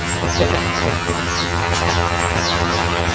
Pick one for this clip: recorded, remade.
remade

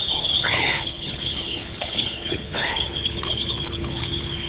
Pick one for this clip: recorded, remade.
remade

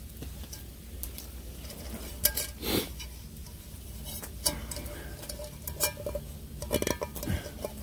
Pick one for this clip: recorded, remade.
recorded